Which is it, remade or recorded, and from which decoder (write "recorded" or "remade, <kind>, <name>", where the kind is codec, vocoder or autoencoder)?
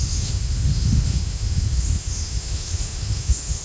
remade, autoencoder, DAC-VAE